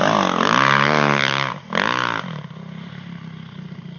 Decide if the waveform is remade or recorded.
recorded